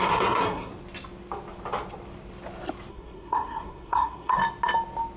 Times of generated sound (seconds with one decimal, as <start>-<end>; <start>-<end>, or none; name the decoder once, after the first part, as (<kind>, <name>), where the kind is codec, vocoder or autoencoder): 0.0-0.7 (codec, SNAC); 2.9-4.3